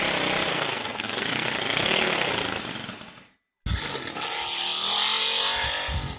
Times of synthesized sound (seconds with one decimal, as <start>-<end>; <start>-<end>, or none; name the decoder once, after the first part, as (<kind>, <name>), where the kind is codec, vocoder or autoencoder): 0.5-2.3 (codec, SNAC)